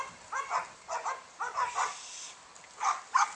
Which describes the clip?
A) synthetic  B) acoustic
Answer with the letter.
B